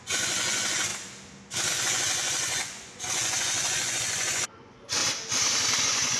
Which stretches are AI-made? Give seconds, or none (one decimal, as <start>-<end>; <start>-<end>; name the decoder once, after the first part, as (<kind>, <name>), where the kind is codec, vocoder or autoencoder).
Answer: 0.0-0.9 (vocoder, Vocos); 1.7-5.0; 5.8-6.2